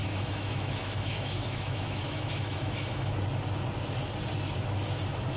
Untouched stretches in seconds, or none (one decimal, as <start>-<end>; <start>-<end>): 3.1-5.4

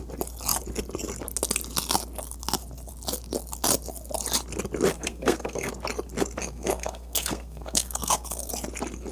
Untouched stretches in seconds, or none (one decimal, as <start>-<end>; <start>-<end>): 0.0-4.9; 5.7-6.4; 8.5-9.1

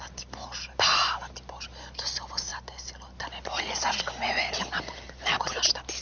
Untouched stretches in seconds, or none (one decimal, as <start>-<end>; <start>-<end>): 0.0-6.0

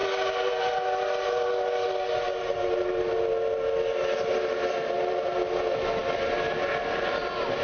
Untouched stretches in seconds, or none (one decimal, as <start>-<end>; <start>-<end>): 0.0-7.6